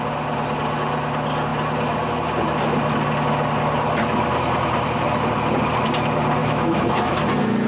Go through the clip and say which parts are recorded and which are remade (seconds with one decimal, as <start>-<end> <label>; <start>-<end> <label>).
0.0-6.4 recorded; 6.4-7.2 remade; 7.2-7.7 recorded